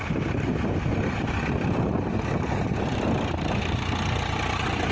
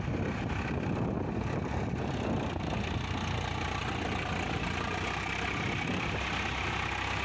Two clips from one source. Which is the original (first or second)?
second